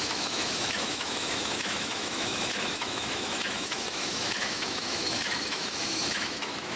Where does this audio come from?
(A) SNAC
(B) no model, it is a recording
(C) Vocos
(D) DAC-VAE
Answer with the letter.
D